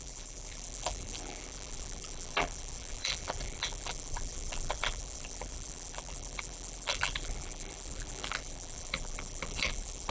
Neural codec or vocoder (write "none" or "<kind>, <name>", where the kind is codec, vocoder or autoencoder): vocoder, BigVGAN v2